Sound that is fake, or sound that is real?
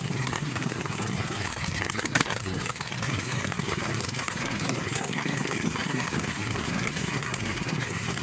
fake